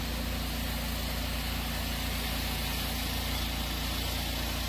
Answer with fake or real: real